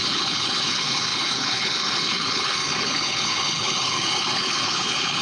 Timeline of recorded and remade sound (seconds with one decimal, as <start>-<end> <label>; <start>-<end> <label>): 0.0-5.2 remade